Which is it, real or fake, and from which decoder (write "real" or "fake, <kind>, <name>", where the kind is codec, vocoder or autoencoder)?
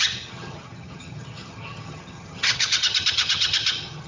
fake, vocoder, HiFi-GAN